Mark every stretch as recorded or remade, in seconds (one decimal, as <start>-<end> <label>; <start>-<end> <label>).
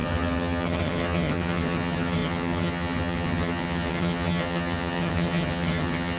0.0-6.2 remade